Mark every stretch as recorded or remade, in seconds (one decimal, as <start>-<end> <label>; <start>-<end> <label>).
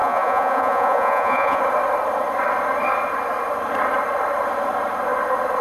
0.0-1.6 remade; 1.6-5.6 recorded